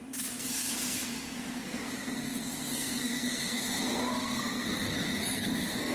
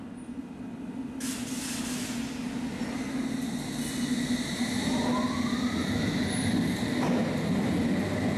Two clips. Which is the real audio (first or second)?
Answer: second